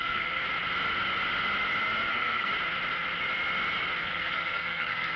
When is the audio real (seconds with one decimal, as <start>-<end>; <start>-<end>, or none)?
0.4-2.1; 2.5-4.0